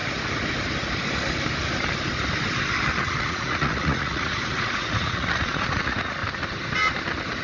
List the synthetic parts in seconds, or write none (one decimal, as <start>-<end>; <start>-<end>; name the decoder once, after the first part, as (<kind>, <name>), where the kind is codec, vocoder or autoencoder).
3.2-6.2 (vocoder, Vocos)